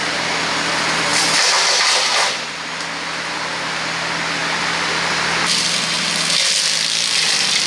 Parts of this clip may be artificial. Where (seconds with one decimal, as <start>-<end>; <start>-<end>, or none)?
none